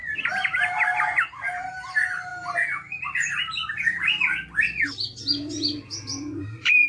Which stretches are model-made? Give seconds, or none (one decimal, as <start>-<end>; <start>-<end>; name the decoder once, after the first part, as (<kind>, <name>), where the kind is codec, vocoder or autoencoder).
1.7-2.3 (vocoder, BigVGAN v2); 6.4-6.9